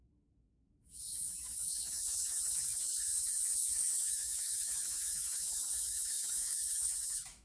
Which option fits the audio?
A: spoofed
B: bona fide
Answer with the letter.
A